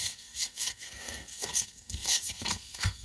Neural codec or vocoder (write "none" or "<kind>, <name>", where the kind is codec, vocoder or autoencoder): codec, SNAC